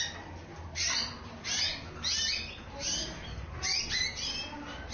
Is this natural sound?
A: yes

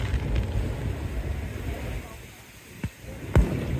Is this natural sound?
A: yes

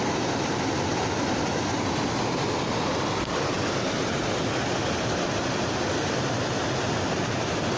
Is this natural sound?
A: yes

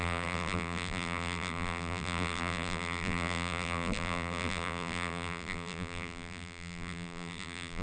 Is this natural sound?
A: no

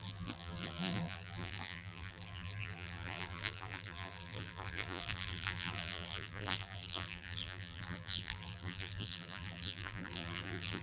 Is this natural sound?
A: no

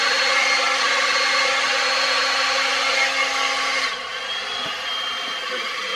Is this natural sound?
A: yes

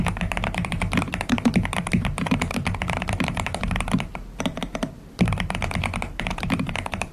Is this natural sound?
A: no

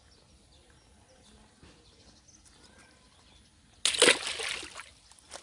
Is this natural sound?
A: yes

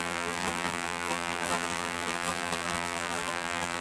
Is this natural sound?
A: no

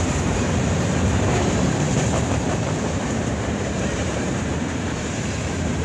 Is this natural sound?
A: no